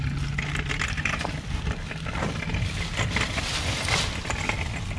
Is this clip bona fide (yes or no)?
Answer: yes